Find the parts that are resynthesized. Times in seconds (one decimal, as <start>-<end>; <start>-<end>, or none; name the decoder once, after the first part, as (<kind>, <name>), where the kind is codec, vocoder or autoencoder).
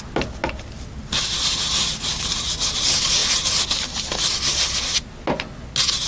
none